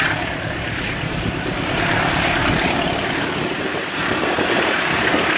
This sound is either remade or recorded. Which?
remade